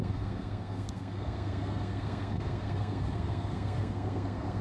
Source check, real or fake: fake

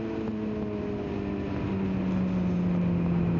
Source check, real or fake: real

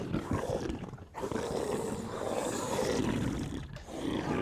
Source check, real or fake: real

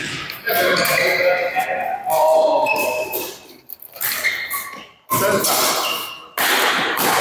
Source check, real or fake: real